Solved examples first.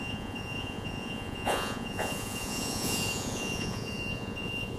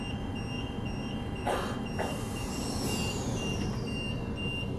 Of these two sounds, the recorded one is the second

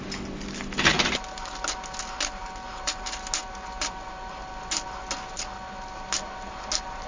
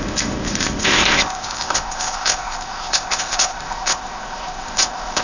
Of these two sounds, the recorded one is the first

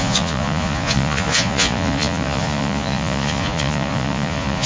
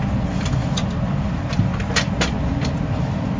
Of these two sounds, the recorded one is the second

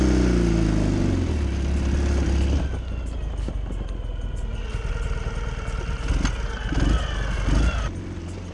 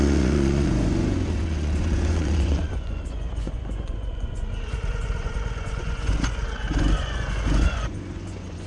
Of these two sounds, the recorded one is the first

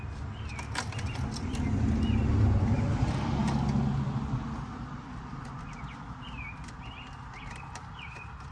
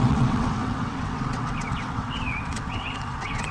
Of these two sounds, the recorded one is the first